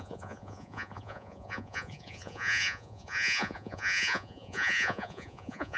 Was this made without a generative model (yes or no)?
no